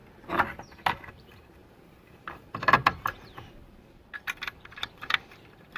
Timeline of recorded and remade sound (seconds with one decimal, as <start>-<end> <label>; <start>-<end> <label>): 0.0-1.1 recorded; 1.1-5.8 remade